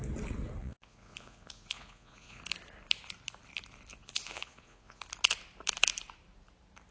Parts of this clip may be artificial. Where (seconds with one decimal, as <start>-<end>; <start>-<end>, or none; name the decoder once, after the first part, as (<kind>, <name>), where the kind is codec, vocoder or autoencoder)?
0.6-2.4 (vocoder, Vocos); 3.9-5.0